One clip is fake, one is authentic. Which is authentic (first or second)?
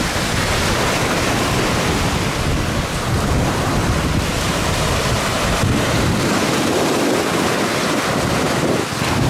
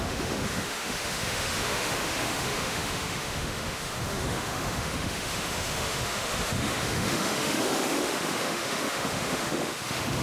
first